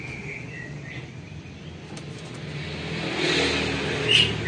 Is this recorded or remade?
recorded